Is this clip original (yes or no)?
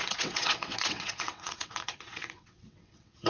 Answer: no